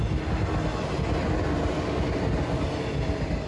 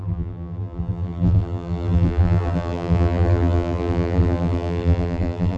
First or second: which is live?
first